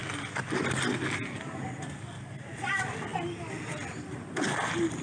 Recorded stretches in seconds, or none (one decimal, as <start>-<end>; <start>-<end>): 0.0-3.1; 4.5-5.0